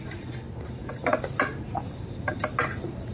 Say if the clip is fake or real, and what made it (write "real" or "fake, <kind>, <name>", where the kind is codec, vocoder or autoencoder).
real